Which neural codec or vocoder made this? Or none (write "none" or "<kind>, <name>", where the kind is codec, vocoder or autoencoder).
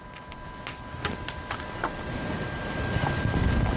none